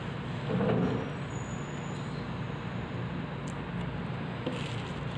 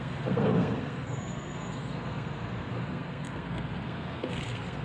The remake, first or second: second